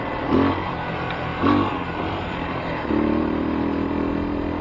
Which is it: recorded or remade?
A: recorded